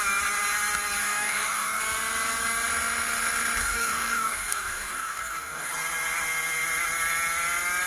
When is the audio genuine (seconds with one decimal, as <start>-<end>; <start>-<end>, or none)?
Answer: 0.0-1.0; 1.8-3.6; 5.7-7.9